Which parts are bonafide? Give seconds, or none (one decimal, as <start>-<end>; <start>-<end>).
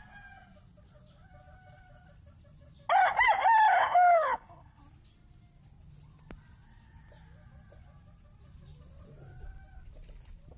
0.0-3.7; 4.8-10.6